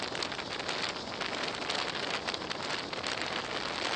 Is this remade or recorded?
recorded